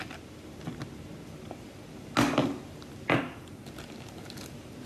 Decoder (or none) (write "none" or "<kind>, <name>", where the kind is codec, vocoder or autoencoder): none